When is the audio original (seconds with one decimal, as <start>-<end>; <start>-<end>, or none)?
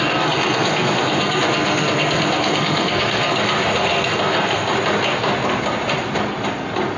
4.7-7.0